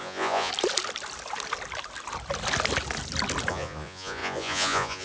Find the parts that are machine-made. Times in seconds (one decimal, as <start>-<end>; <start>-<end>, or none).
0.0-0.5; 3.5-5.0